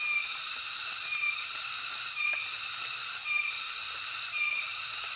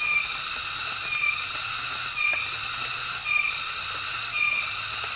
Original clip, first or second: second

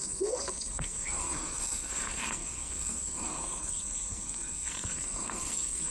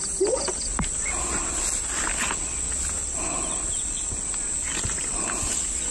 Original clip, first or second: second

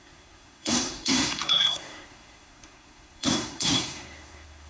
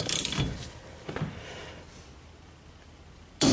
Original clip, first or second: second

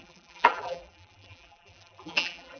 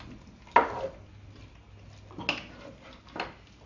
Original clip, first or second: second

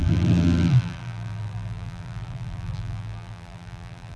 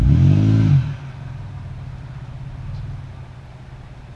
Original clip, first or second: second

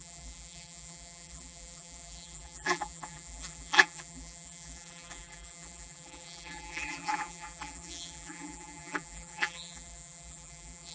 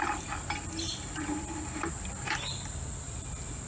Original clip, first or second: second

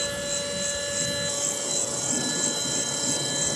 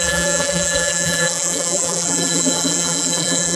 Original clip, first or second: first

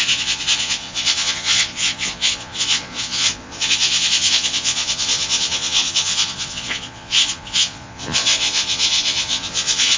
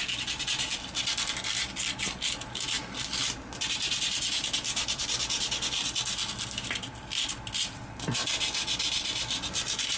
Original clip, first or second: second